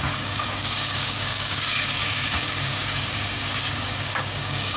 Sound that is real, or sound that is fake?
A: fake